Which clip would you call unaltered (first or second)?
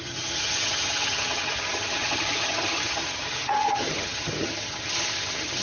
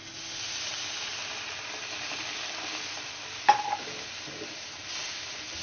second